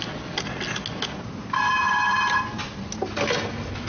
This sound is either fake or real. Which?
real